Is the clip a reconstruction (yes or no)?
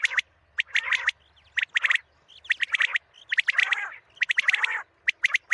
no